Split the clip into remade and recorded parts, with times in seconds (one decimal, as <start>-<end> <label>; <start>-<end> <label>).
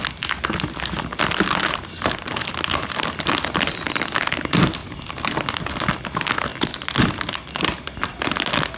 0.0-8.8 recorded